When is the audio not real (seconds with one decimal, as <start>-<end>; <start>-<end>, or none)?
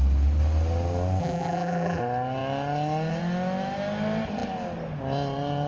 1.2-2.0